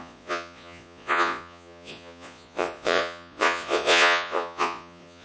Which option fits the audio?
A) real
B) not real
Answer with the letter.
B